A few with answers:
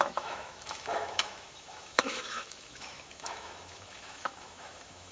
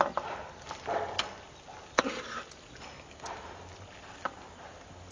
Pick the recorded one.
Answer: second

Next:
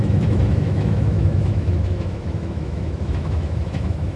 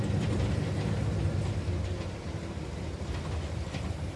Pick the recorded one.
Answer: second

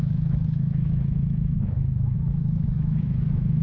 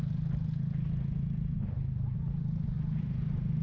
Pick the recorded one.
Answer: second